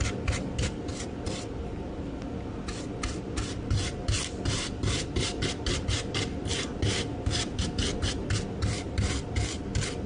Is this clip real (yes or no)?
yes